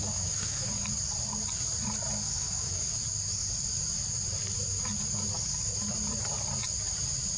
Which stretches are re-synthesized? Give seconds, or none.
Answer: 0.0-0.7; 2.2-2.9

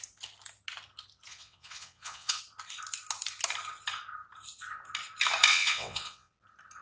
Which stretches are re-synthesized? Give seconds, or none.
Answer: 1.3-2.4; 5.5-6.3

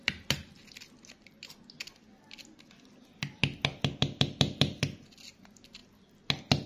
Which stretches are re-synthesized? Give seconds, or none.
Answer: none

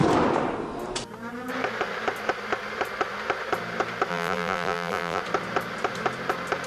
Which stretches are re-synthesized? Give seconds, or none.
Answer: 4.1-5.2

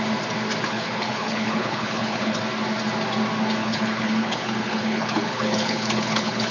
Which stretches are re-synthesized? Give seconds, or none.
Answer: 0.7-2.4; 3.6-6.5